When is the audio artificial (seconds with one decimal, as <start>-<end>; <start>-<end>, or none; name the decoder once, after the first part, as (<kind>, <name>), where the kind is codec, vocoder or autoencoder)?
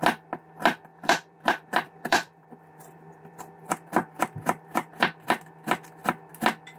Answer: 0.9-5.0 (vocoder, BigVGAN v2)